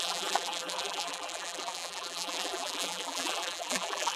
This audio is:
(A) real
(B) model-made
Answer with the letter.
B